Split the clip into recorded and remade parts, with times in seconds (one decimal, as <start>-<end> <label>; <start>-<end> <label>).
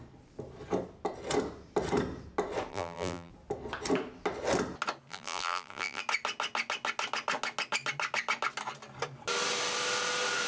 0.0-2.7 recorded; 2.7-3.3 remade; 3.3-5.1 recorded; 5.1-6.0 remade; 6.0-10.5 recorded